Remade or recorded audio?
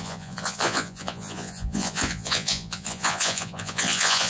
remade